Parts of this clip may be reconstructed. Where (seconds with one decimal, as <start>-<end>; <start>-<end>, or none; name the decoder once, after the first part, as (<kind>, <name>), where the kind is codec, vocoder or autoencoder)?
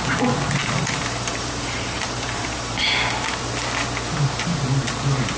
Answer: 0.6-2.8 (vocoder, BigVGAN v2)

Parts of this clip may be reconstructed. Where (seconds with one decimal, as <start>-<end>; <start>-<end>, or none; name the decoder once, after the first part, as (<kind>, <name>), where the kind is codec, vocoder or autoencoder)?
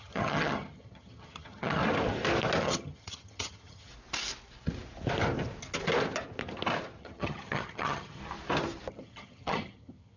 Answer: 0.0-1.8 (vocoder, HiFi-GAN); 2.6-3.9; 7.0-8.2; 8.9-10.2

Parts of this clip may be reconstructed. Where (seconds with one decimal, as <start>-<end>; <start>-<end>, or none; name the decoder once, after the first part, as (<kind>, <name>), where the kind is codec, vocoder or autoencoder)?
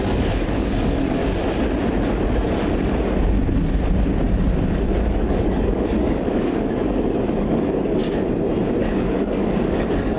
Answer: 0.0-1.2 (codec, DAC); 5.1-8.0; 8.8-10.2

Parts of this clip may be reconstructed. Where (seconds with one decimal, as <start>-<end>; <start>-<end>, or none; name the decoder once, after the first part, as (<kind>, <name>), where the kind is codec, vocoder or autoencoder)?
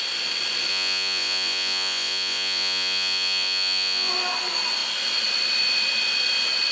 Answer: 0.7-4.1 (vocoder, Vocos)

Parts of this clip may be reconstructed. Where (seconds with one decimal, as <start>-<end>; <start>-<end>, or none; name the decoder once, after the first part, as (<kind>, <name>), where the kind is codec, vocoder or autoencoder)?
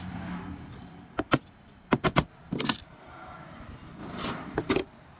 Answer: 0.0-5.2 (vocoder, BigVGAN v2)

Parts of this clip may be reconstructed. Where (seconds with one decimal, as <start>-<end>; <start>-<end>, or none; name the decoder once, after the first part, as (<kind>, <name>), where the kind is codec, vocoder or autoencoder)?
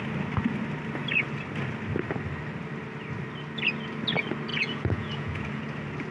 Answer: 4.5-5.6 (vocoder, Vocos)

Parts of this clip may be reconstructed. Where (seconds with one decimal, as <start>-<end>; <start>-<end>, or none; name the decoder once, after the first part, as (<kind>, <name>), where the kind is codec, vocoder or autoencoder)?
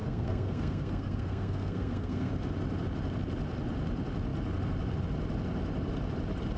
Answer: 0.0-2.3 (codec, SNAC)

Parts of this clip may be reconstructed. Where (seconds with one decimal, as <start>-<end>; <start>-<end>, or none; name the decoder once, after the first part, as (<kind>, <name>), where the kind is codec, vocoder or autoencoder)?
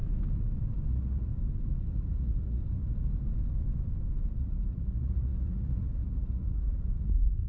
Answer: 0.9-1.3 (vocoder, Vocos); 1.9-2.6; 4.4-7.5